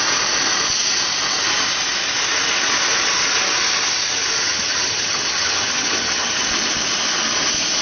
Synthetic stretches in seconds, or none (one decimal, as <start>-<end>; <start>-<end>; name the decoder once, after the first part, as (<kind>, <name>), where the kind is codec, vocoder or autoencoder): 4.4-6.4 (vocoder, HiFi-GAN)